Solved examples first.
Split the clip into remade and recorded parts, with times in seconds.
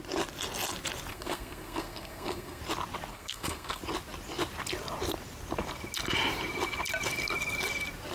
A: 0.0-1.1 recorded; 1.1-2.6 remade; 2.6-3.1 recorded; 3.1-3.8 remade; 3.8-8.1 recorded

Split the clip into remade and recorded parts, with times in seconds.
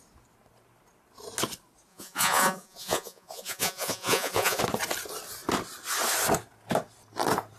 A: 0.0-1.9 recorded; 1.9-4.6 remade; 4.6-7.6 recorded